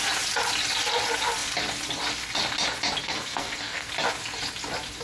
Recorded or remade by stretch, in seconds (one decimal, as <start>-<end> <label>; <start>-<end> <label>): 0.0-3.0 recorded; 3.0-3.9 remade; 3.9-5.0 recorded

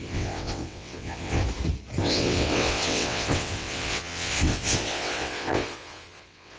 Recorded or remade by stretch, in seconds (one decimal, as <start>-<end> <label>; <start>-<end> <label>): 0.0-1.4 remade; 1.4-2.0 recorded; 2.0-6.6 remade

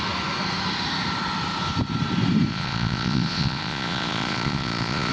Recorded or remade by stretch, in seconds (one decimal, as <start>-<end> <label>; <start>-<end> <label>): 0.0-2.5 recorded; 2.5-5.1 remade